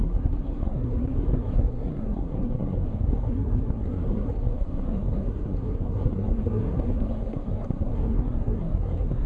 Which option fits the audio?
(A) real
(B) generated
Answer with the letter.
B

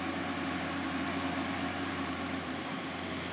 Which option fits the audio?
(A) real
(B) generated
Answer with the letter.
B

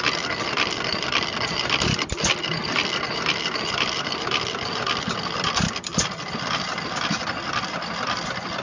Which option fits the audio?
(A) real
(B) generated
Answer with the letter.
B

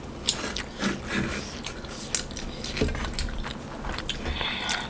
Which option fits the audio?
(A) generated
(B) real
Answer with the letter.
B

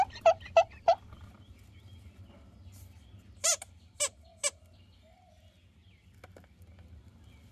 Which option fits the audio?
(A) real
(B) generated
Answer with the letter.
A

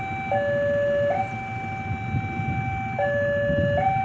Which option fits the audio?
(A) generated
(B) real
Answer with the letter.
B